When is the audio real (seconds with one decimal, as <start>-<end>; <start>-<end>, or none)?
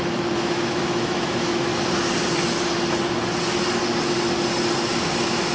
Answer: 1.7-5.0